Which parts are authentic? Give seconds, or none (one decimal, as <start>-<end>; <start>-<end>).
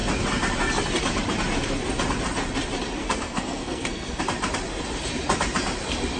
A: 0.0-3.0; 4.2-6.2